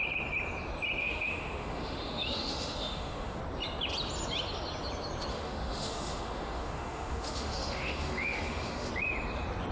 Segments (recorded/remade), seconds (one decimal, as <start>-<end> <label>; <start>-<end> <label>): 0.0-1.0 recorded; 1.0-3.4 remade; 3.4-5.3 recorded; 5.3-8.9 remade; 8.9-9.7 recorded